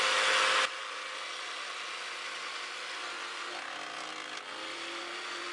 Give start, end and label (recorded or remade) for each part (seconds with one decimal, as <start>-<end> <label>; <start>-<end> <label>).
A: 0.0-5.5 recorded